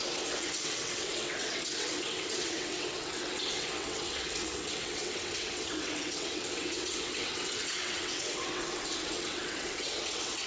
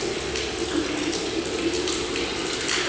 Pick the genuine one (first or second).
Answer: second